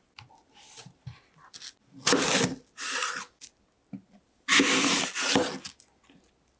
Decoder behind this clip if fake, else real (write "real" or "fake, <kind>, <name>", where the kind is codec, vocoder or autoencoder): real